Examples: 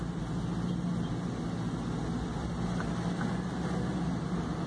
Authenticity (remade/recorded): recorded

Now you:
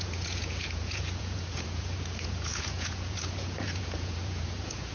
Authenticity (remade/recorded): remade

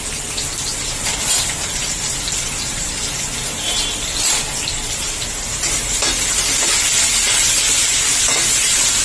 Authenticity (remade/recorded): recorded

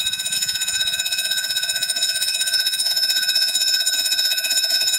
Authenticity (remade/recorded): remade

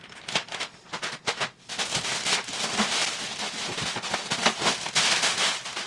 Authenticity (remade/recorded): recorded